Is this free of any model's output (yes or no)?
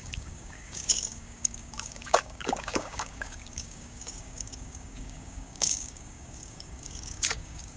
no